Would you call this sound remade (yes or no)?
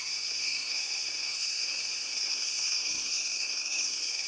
yes